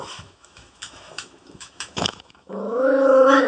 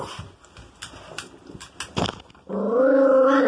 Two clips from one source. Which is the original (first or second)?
second